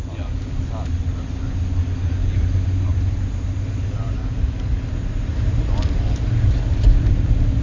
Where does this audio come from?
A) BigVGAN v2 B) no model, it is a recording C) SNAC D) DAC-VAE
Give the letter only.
B